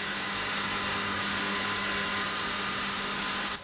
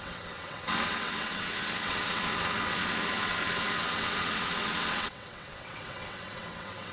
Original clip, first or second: first